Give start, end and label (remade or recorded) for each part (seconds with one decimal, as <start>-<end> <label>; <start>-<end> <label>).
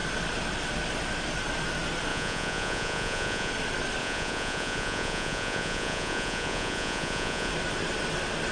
0.0-2.1 recorded; 2.1-3.5 remade; 3.5-4.0 recorded; 4.0-7.5 remade; 7.5-8.5 recorded